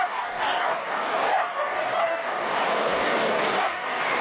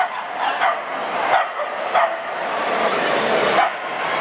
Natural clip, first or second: second